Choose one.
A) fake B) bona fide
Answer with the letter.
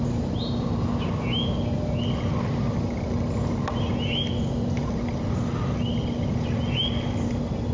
B